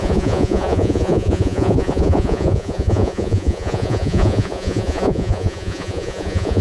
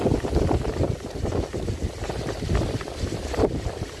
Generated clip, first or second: first